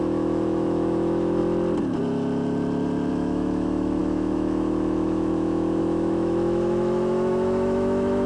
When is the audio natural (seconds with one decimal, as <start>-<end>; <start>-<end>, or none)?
1.4-3.1